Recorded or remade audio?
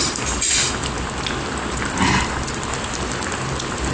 recorded